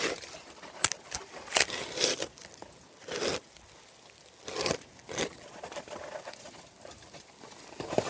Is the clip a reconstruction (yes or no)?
no